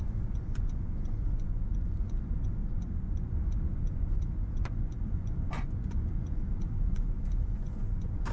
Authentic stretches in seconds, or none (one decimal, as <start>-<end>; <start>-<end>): none